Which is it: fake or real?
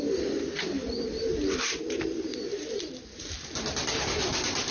real